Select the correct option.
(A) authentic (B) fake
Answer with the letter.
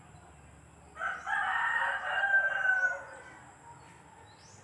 A